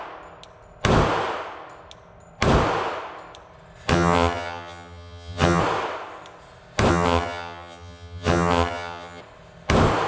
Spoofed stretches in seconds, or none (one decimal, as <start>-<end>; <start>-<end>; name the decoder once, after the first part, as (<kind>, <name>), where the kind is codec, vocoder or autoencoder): 3.9-5.6 (vocoder, HiFi-GAN); 6.9-9.2